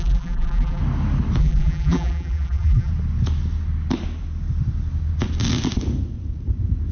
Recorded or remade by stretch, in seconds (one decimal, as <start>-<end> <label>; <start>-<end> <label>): 0.0-0.8 remade; 0.8-1.4 recorded; 1.4-2.9 remade; 2.9-6.9 recorded